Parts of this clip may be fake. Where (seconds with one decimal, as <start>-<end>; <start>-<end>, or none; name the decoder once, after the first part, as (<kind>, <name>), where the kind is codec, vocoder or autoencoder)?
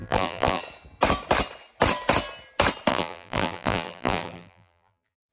0.0-0.6 (vocoder, BigVGAN v2); 2.9-5.3